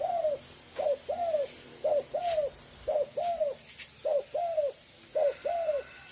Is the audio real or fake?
real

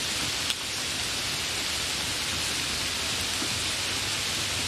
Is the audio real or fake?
real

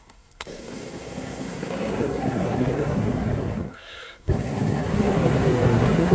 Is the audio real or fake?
fake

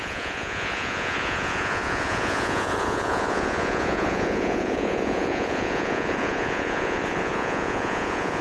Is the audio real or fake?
fake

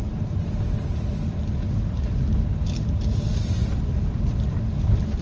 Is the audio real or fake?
real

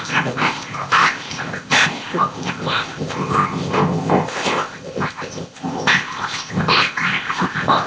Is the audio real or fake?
fake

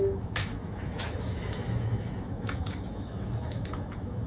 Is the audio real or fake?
fake